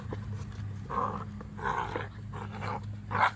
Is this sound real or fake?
real